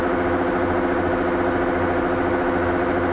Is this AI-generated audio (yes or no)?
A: no